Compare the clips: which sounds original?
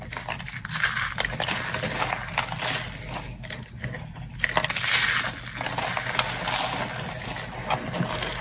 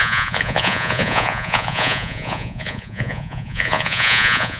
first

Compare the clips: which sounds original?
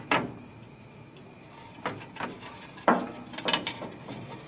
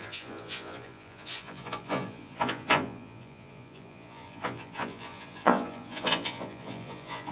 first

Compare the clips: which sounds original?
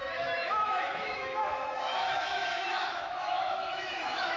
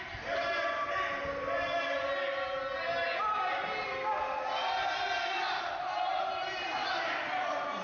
second